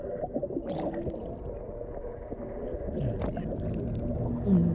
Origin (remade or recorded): recorded